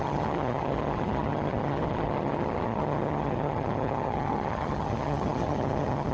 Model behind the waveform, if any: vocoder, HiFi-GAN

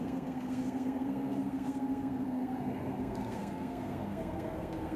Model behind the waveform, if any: codec, SNAC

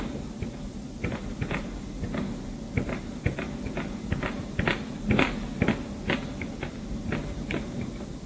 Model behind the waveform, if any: none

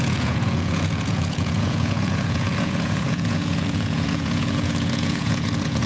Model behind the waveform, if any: vocoder, Vocos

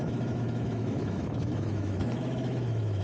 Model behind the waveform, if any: autoencoder, DAC-VAE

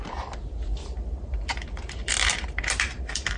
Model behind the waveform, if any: vocoder, BigVGAN v2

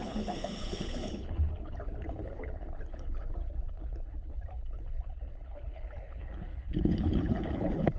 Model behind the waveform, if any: codec, HILCodec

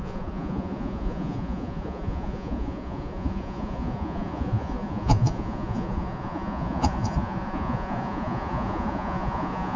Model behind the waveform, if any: vocoder, Vocos